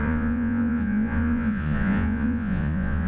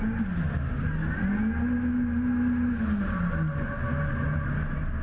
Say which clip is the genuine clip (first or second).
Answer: second